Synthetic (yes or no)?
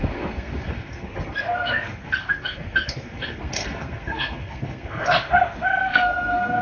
yes